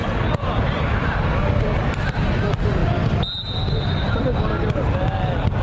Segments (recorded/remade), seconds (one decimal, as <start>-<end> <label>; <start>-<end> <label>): 0.0-2.4 remade; 2.4-5.6 recorded